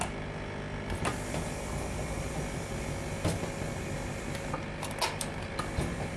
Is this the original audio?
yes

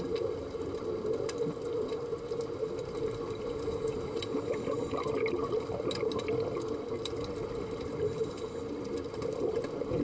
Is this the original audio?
yes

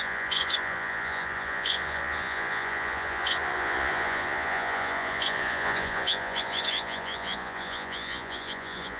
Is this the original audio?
no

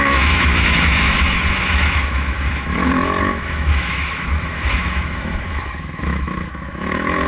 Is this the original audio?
no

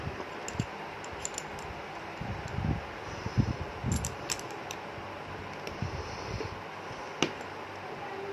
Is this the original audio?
yes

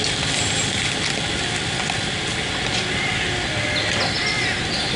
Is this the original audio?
yes